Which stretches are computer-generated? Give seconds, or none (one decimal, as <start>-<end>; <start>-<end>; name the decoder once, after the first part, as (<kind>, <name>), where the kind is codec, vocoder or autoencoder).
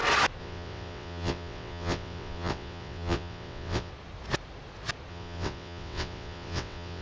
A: 0.4-3.9 (vocoder, WaveNeXt); 5.1-7.0